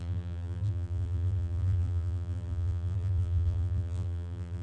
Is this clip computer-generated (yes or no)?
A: yes